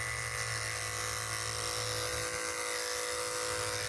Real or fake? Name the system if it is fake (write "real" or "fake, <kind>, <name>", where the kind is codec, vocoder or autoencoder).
real